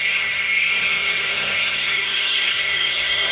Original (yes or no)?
no